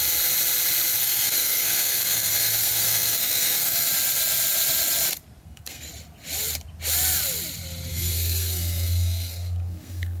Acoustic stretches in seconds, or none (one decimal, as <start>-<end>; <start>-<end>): 0.0-1.0; 3.9-5.4; 5.9-7.9